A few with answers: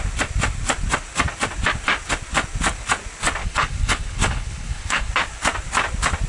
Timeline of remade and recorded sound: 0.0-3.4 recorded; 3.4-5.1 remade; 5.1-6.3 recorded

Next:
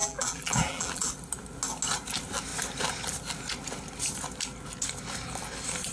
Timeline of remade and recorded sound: 0.0-1.1 remade; 1.1-5.9 recorded